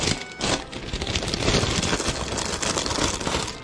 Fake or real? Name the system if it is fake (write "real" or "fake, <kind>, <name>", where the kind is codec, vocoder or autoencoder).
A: real